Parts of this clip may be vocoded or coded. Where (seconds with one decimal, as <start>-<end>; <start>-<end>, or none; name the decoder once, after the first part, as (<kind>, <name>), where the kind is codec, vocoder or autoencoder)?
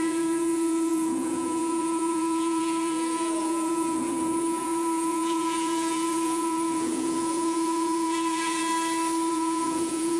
0.0-8.7 (vocoder, Vocos); 9.3-10.2